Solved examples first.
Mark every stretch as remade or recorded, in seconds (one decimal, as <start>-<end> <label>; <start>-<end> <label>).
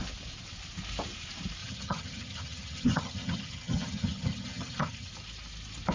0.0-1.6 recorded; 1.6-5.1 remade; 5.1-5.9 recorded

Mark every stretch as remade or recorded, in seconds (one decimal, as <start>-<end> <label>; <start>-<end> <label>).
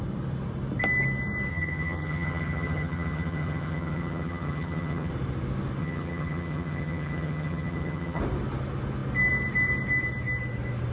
0.0-1.5 recorded; 1.5-5.1 remade; 5.1-5.8 recorded; 5.8-8.2 remade; 8.2-10.9 recorded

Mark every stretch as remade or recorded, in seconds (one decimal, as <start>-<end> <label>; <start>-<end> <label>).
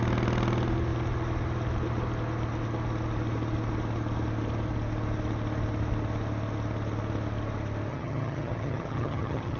0.0-7.9 recorded; 7.9-9.6 remade